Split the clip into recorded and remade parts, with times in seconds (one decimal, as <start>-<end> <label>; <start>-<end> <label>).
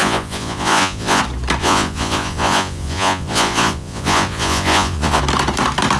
0.0-1.2 remade; 1.2-1.6 recorded; 1.6-5.2 remade; 5.2-6.0 recorded